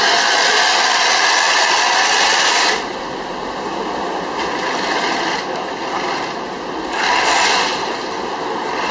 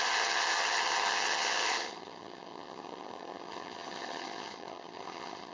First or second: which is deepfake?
second